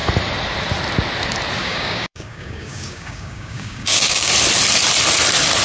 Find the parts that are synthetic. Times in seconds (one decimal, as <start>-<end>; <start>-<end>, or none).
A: 1.6-4.3